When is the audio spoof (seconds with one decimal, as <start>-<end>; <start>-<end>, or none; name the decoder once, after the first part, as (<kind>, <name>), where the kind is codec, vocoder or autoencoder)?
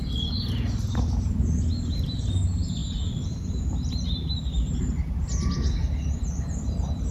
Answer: none